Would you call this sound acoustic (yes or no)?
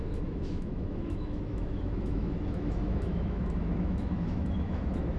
no